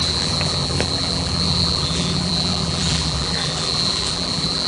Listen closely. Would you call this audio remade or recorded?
remade